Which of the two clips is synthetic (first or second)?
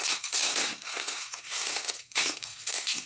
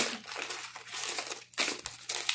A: first